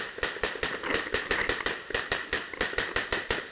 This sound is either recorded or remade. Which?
recorded